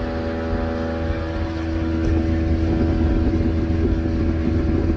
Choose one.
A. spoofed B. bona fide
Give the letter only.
B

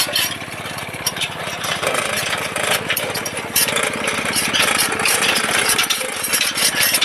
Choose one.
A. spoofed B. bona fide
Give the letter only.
A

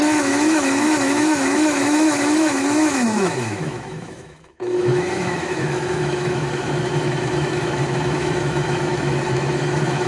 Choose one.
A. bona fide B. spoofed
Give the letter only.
B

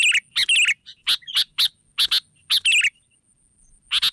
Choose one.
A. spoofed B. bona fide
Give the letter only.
B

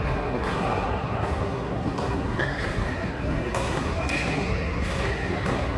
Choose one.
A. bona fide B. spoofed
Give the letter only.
B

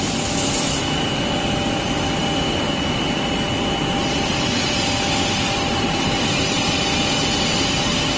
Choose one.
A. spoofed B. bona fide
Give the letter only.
B